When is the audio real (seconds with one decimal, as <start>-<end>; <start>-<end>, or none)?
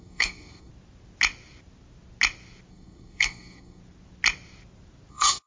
0.7-2.7; 3.8-5.1